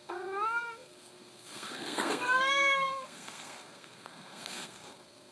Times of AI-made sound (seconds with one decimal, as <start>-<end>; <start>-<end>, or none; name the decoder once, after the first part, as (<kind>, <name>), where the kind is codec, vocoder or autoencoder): 0.0-5.3 (codec, SNAC)